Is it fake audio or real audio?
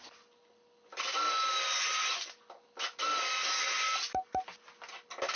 real